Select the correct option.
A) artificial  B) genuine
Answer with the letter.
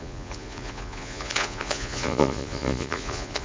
A